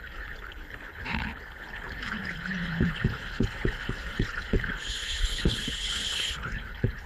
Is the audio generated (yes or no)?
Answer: yes